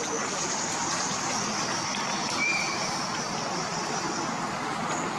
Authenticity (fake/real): real